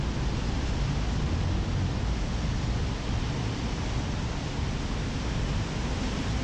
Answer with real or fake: real